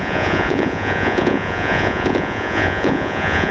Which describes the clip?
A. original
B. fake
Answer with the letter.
B